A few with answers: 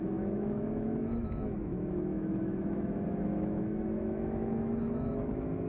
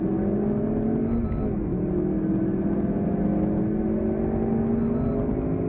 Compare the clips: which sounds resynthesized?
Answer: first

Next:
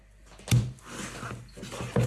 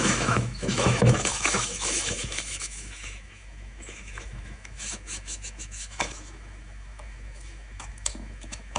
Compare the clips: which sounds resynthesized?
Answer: second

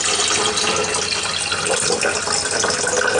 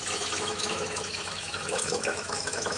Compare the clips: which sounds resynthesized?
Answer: second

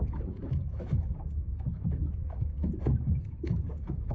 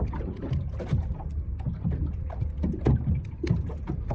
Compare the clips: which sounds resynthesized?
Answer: first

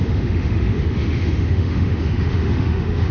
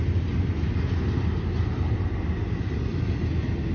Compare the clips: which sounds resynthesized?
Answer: first